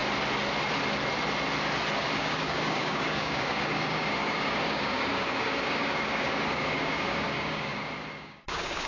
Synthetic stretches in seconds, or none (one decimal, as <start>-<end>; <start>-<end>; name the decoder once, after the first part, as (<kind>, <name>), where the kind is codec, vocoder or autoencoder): 2.2-7.7 (codec, DAC); 8.2-8.9